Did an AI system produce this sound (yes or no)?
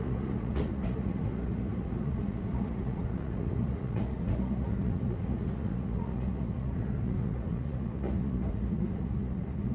yes